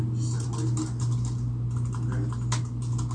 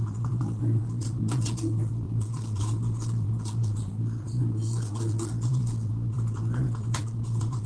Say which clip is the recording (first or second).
first